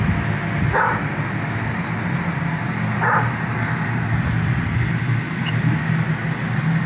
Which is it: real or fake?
real